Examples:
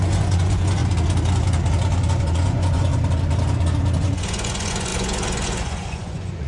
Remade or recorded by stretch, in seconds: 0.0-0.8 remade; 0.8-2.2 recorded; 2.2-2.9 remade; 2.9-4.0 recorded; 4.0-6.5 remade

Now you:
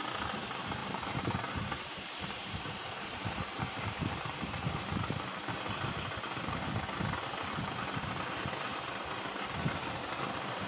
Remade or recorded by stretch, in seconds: 0.0-0.8 recorded; 0.8-5.5 remade; 5.5-10.7 recorded